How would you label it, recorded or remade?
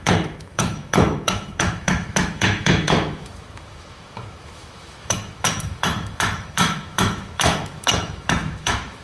remade